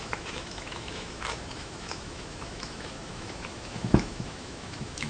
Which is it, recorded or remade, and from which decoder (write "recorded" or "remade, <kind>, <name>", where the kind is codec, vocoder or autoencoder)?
remade, autoencoder, DAC-VAE